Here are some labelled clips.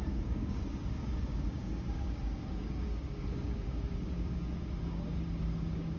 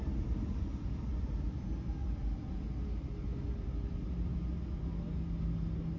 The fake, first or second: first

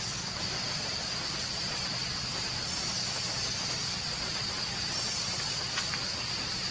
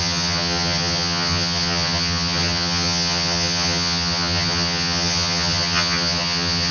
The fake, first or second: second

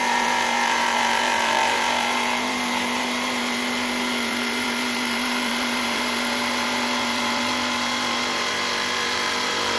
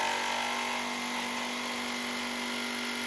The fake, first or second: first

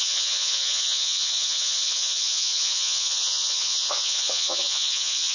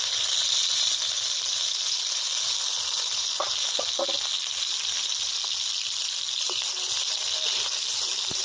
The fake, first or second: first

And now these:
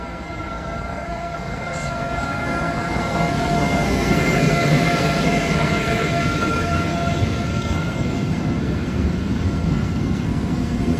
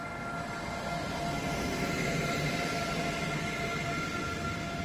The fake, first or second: first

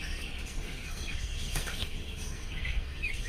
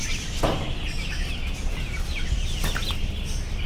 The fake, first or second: first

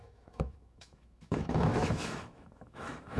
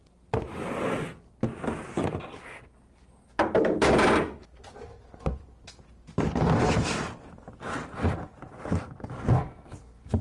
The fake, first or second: first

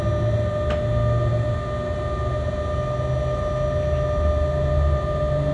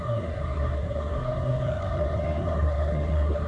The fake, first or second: second